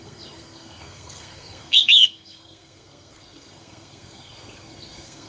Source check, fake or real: fake